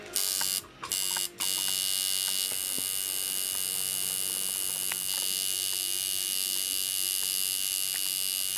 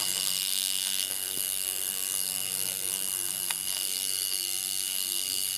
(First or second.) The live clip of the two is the first